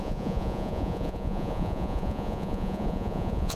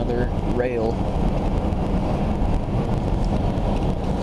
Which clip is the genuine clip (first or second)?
second